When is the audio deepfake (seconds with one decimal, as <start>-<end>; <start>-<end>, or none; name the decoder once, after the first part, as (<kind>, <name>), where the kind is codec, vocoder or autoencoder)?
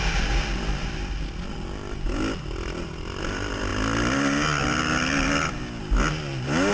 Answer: none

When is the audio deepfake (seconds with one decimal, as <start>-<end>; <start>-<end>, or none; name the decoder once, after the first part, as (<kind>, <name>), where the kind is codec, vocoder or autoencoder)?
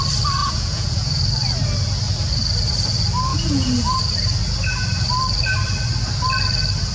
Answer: 0.4-1.2 (vocoder, Vocos); 3.3-4.0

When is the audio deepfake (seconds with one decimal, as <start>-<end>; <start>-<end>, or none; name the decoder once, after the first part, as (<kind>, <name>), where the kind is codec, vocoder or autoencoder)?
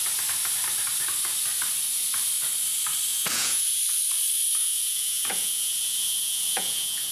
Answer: 3.1-3.8 (vocoder, Vocos); 4.6-7.1